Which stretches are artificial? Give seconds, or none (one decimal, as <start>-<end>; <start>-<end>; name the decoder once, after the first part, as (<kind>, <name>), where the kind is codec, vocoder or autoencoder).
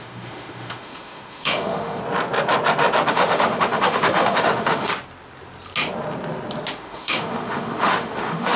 0.0-2.0 (autoencoder, DAC-VAE); 3.1-4.9; 6.8-8.6